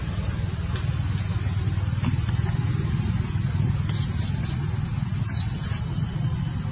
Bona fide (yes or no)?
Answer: yes